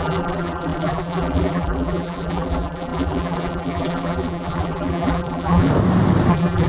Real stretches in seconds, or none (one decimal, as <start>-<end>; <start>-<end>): 5.7-6.3